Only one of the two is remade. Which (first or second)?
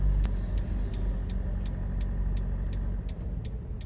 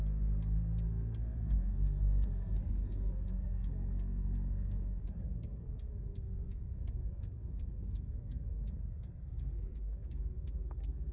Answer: second